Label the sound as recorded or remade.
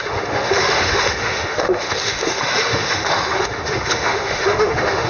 remade